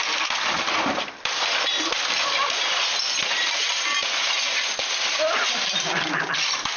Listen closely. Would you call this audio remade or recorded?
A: recorded